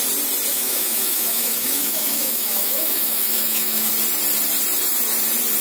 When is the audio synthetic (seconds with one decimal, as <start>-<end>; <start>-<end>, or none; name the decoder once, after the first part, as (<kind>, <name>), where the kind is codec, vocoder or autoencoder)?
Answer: 0.5-3.9 (autoencoder, DAC-VAE)